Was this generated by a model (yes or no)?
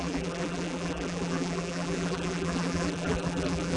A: yes